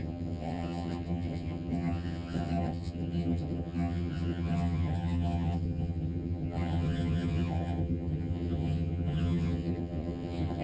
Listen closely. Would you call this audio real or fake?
fake